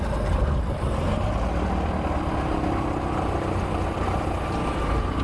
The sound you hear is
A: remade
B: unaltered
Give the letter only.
B